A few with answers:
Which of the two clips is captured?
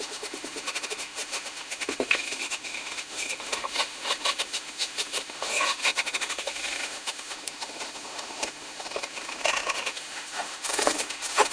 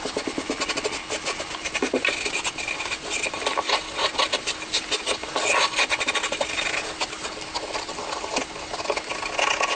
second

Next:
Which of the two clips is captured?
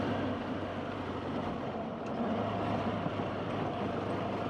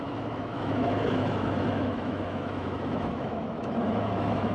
first